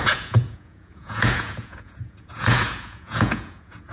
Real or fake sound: fake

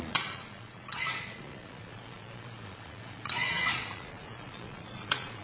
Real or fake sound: fake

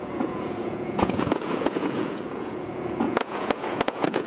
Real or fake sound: fake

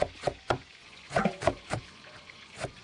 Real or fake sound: fake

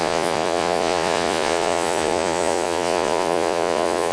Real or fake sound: fake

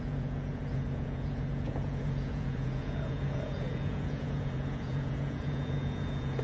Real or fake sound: fake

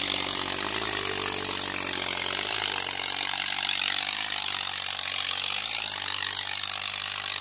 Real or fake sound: real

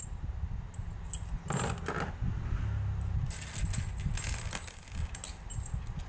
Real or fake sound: real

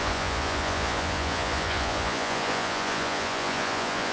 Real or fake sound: fake